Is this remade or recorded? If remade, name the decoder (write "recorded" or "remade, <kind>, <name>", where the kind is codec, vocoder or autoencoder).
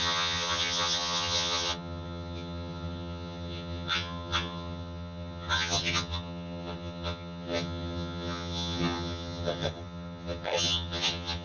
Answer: remade, vocoder, HiFi-GAN